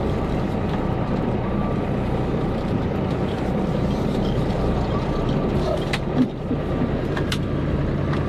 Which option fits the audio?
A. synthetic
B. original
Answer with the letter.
A